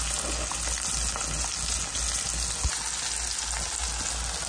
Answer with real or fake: real